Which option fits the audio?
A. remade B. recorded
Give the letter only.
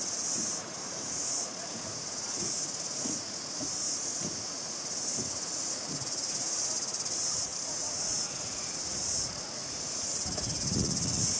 A